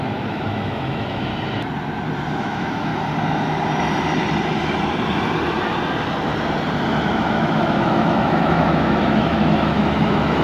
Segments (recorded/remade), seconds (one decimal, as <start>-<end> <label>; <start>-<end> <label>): 0.0-1.3 remade; 1.3-2.3 recorded; 2.3-2.9 remade; 2.9-6.9 recorded; 6.9-10.4 remade